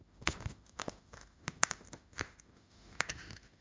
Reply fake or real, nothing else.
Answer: fake